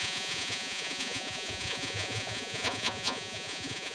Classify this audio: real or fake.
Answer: fake